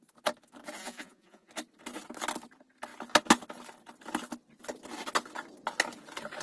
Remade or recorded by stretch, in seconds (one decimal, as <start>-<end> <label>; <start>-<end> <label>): 0.0-0.8 recorded; 0.8-1.5 remade; 1.5-6.4 recorded